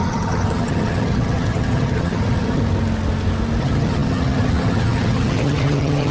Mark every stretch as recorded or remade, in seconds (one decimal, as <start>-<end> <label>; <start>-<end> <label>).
0.0-2.6 remade; 2.6-3.6 recorded; 3.6-6.1 remade

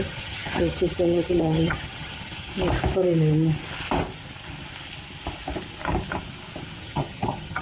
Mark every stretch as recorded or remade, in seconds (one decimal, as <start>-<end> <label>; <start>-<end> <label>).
0.0-2.5 remade; 2.5-6.8 recorded; 6.8-7.6 remade

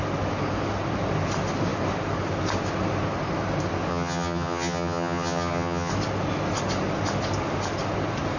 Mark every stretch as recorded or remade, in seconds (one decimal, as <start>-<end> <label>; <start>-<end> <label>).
0.0-3.9 recorded; 3.9-5.9 remade; 5.9-8.4 recorded

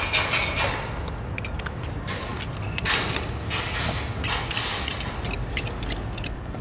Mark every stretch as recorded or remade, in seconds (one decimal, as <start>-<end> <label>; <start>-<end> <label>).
0.0-6.6 recorded